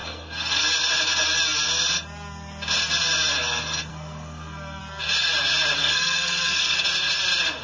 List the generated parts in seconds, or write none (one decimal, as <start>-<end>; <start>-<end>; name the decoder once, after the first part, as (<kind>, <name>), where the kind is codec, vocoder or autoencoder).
0.0-0.6 (codec, SNAC); 3.9-4.8; 5.8-6.8